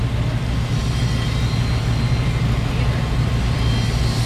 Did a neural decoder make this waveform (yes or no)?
no